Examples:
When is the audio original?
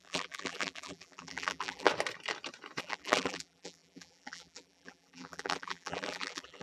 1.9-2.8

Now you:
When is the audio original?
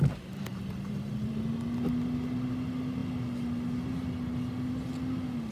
0.0-0.5; 1.3-5.5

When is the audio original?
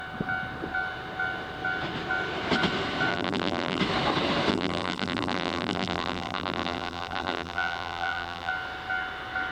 0.0-3.1; 3.8-4.5; 8.5-9.5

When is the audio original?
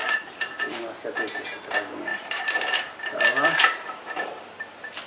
0.8-2.1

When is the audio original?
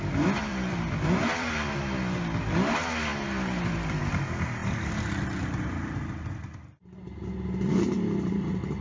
0.0-0.4; 1.5-8.8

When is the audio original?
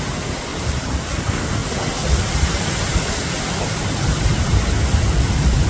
0.0-0.5; 1.2-5.7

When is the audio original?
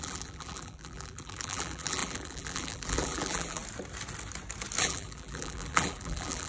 3.6-4.8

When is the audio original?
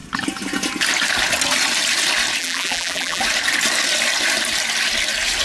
0.0-2.4; 3.2-5.4